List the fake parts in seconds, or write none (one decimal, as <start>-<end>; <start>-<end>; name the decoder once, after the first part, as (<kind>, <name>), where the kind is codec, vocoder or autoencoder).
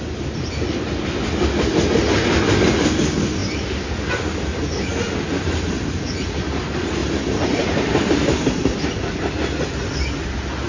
7.0-8.1 (vocoder, BigVGAN v2)